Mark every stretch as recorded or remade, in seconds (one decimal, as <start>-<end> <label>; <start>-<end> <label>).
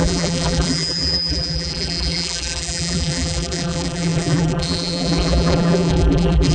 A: 0.0-6.5 remade